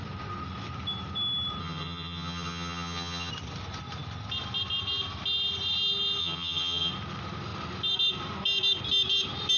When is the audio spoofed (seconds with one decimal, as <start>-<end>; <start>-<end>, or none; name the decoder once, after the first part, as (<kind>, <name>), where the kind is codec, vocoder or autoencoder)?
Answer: 1.6-3.3 (vocoder, HiFi-GAN); 6.2-6.9